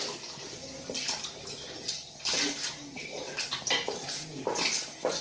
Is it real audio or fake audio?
fake